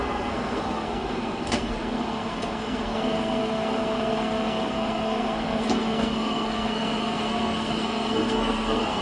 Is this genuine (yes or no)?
no